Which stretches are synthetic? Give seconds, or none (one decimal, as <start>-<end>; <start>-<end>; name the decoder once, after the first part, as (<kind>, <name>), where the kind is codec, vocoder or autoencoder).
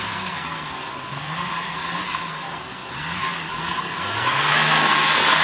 0.0-5.4 (codec, SNAC)